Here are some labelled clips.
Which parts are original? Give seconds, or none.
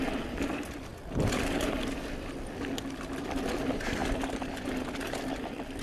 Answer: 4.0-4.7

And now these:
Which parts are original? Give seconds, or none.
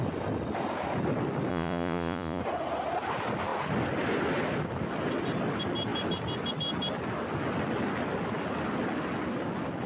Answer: 0.0-1.5; 2.4-9.9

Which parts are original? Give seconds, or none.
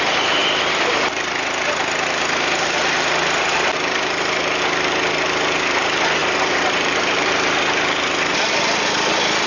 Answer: 0.0-6.2; 7.3-8.3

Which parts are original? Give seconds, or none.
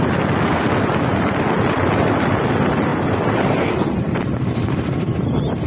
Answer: 0.0-2.9; 5.3-5.7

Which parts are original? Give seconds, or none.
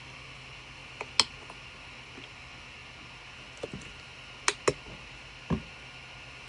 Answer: 0.0-6.5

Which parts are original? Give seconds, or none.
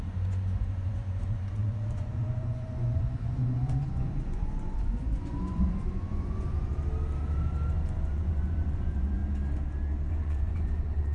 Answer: 6.7-7.7; 9.2-10.1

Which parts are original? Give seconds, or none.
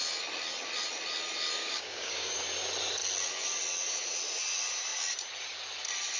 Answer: 0.0-1.6; 2.4-6.2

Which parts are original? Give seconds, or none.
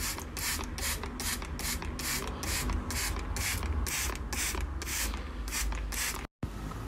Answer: 0.0-4.9; 5.6-6.9